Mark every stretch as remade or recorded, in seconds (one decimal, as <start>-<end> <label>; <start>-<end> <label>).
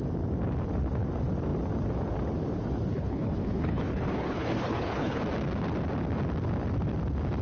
0.0-2.9 recorded; 2.9-5.2 remade; 5.2-7.4 recorded